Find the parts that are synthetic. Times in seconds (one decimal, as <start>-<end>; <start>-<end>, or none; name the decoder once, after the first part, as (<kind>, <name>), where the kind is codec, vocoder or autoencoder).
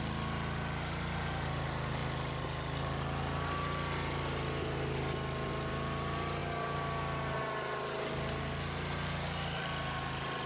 none